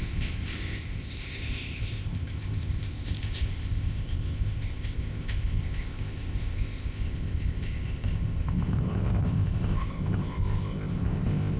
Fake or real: fake